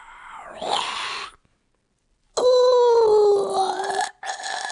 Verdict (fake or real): real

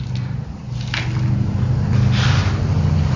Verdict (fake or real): real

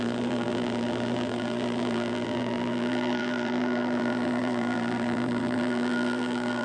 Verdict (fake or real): fake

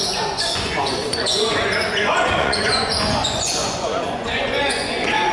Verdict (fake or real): fake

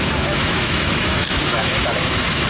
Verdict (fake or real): fake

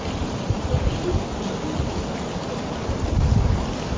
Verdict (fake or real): real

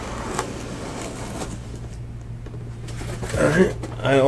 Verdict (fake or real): real